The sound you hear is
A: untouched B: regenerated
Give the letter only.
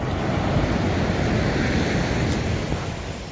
A